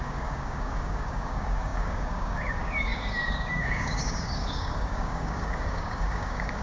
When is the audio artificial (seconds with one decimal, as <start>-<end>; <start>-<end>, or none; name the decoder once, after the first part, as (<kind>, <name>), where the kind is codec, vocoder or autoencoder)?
0.0-6.6 (codec, DAC)